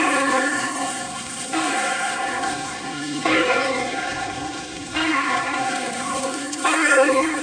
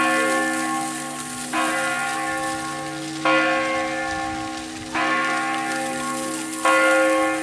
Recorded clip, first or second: second